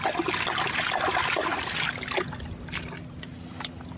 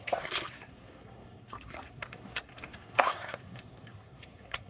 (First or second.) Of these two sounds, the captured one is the first